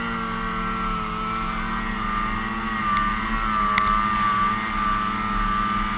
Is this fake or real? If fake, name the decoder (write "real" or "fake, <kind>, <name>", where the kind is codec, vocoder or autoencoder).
real